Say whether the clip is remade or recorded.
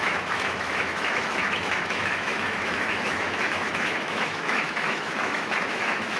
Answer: remade